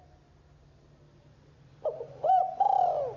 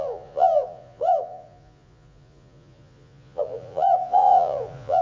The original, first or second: first